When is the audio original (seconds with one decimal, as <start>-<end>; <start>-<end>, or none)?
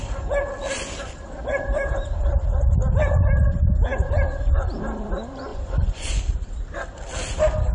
0.0-5.5; 6.2-7.7